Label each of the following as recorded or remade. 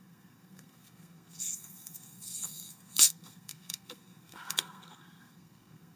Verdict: remade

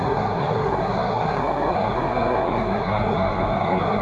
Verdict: remade